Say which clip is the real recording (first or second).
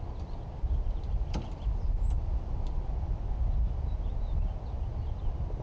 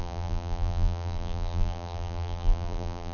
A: first